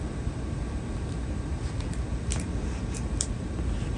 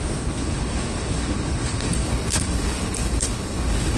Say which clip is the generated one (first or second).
second